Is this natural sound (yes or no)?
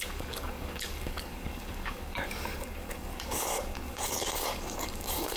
no